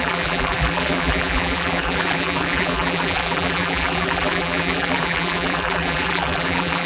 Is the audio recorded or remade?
remade